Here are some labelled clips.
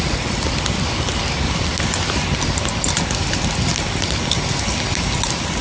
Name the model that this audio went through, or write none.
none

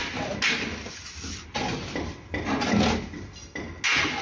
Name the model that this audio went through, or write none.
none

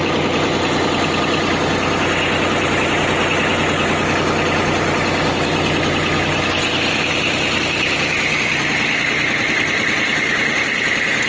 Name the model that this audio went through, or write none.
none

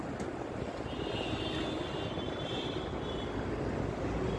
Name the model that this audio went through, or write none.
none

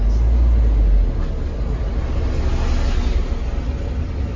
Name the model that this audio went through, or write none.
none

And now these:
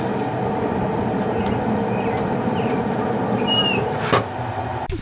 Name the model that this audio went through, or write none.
none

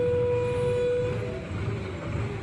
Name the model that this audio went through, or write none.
none